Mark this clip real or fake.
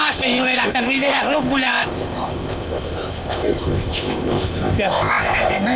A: fake